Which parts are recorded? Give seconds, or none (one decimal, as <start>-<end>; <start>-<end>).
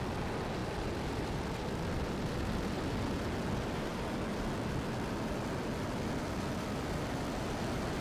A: 0.0-0.6; 2.2-6.2; 7.1-8.0